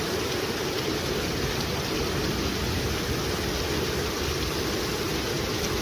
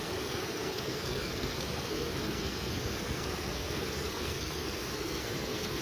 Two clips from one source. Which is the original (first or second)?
first